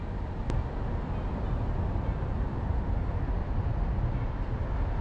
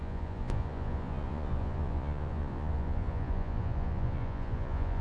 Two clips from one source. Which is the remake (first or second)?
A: second